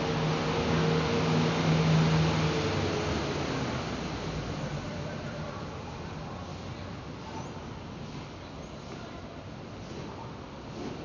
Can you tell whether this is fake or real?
real